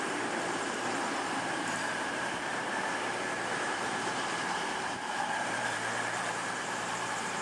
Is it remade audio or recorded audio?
remade